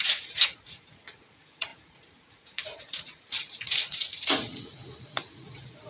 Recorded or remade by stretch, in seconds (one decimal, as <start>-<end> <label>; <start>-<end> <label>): 0.0-5.9 remade

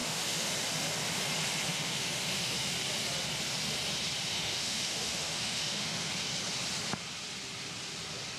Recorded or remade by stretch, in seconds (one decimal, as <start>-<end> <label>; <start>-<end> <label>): 0.0-0.5 remade; 0.5-1.7 recorded; 1.7-2.7 remade; 2.7-4.3 recorded; 4.3-6.1 remade; 6.1-8.4 recorded

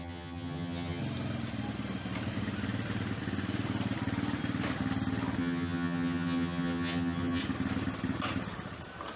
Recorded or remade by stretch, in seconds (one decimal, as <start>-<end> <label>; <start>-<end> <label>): 0.0-1.0 remade; 1.0-5.4 recorded; 5.4-7.4 remade; 7.4-9.2 recorded

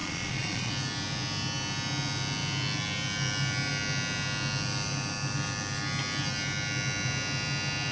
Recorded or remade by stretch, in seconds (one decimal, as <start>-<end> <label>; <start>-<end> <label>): 0.0-0.7 remade; 0.7-7.9 recorded

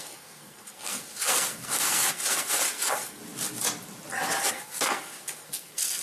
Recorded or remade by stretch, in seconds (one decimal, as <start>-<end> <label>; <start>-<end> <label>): 0.0-3.2 remade; 3.2-4.5 recorded; 4.5-6.0 remade